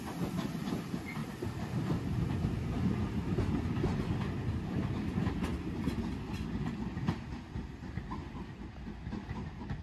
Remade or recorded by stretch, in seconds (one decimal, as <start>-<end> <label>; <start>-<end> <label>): 0.0-1.2 recorded; 1.2-2.0 remade; 2.0-9.8 recorded